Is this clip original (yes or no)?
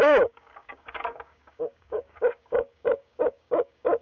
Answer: no